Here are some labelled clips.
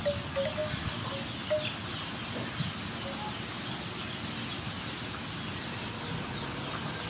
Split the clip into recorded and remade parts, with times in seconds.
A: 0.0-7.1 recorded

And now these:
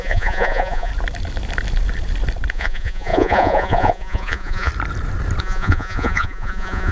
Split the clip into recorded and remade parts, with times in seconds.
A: 0.0-0.9 remade; 0.9-2.5 recorded; 2.5-4.7 remade; 4.7-5.4 recorded; 5.4-6.9 remade

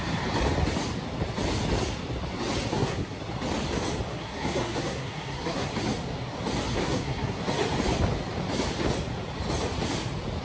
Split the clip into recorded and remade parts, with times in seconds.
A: 0.0-2.7 recorded; 2.7-3.2 remade; 3.2-4.1 recorded; 4.1-5.7 remade; 5.7-6.8 recorded; 6.8-7.4 remade; 7.4-10.4 recorded

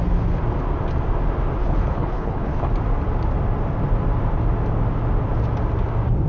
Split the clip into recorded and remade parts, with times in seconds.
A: 0.0-1.6 recorded; 1.6-2.7 remade; 2.7-6.3 recorded

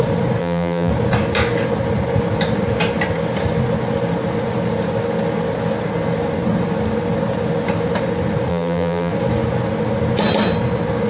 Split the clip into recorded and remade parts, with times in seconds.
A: 0.0-0.4 recorded; 0.4-0.9 remade; 0.9-8.5 recorded; 8.5-9.1 remade; 9.1-11.1 recorded

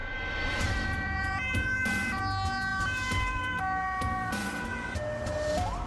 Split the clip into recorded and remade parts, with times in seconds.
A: 0.0-2.2 remade; 2.2-2.7 recorded; 2.7-3.6 remade; 3.6-5.9 recorded